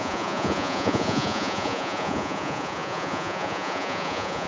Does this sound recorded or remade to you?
remade